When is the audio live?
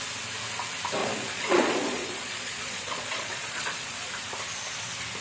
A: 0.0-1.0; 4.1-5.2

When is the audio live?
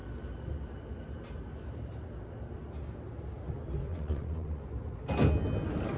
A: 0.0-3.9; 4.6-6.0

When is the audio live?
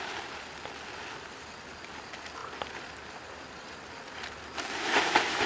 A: 0.0-5.5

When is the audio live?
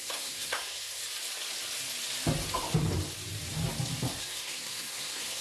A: 1.0-4.2